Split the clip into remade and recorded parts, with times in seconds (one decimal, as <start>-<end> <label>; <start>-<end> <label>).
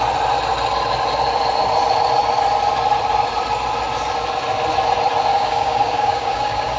0.0-5.3 recorded; 5.3-6.8 remade